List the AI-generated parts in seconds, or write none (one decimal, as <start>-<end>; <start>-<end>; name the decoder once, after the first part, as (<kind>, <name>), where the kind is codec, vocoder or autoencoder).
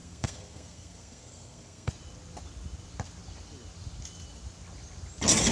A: 0.0-1.9 (codec, SNAC)